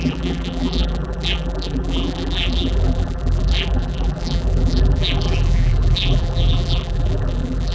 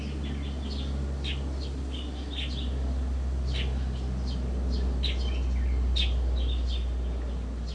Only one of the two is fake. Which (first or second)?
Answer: first